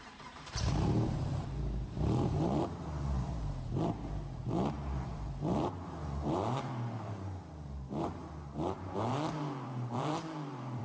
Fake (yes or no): yes